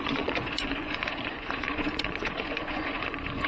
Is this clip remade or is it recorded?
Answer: remade